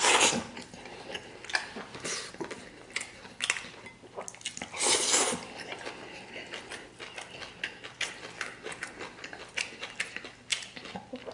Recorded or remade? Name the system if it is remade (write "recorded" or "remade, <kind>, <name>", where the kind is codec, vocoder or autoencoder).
recorded